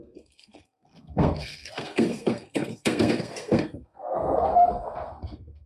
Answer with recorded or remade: remade